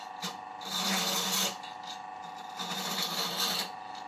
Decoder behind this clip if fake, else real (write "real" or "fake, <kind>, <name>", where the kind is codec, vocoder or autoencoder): real